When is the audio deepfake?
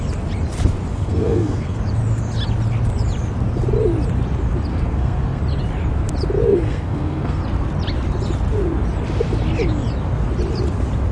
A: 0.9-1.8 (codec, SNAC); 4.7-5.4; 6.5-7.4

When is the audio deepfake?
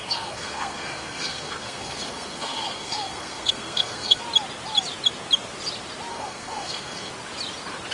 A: 0.0-4.2 (codec, SNAC); 6.1-7.1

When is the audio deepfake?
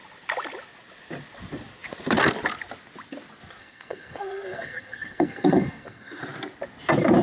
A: 3.6-6.2 (codec, SNAC)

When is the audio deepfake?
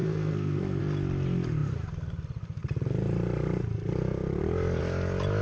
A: 0.0-0.8 (codec, SNAC)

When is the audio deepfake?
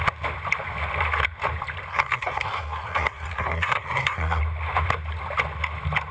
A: 1.9-4.4 (codec, SNAC)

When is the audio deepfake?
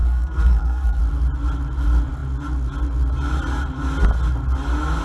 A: 0.0-1.0 (codec, SNAC)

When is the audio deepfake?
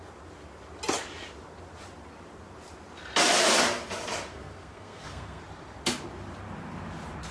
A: 4.3-5.4 (codec, SNAC)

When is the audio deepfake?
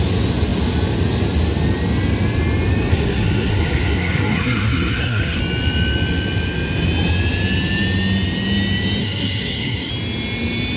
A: 2.9-5.4 (codec, SNAC); 9.0-9.9